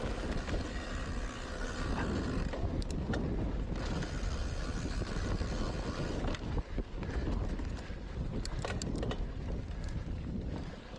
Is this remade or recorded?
recorded